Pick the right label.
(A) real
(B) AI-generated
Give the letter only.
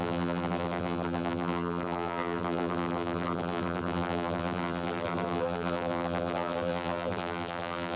B